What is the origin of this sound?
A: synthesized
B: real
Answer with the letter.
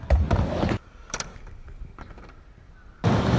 B